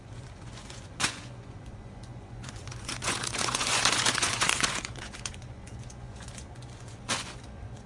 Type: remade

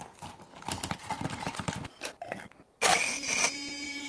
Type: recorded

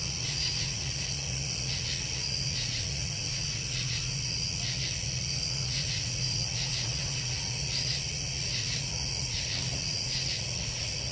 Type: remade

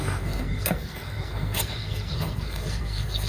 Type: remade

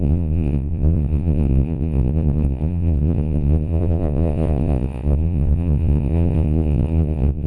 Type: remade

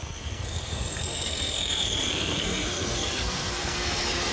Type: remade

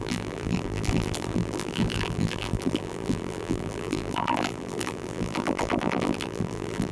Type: remade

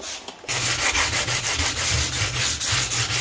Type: recorded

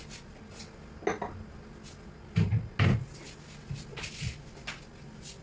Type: recorded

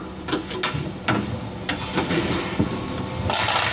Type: recorded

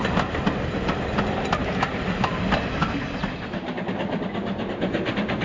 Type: recorded